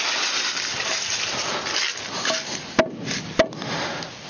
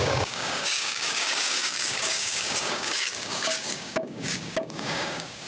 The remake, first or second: second